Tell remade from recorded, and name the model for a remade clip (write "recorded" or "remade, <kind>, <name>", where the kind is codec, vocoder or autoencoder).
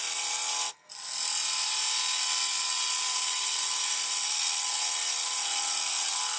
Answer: recorded